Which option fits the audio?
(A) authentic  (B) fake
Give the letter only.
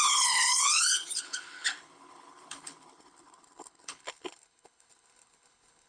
B